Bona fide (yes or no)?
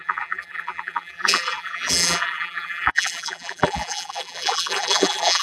no